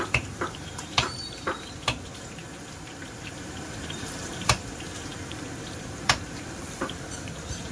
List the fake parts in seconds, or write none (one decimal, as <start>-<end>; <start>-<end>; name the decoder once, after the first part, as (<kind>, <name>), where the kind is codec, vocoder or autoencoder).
0.0-7.7 (vocoder, BigVGAN v2)